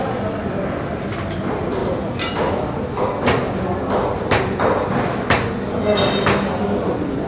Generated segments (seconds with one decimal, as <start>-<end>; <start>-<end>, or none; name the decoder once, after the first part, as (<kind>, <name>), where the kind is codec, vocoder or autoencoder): none